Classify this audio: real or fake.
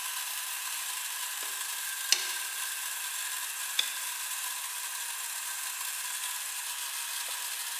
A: real